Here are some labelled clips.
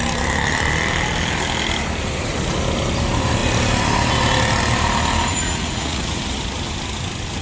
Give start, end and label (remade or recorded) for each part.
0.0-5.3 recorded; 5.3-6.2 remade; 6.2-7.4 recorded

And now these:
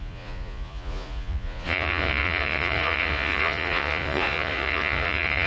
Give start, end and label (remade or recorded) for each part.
0.0-5.5 remade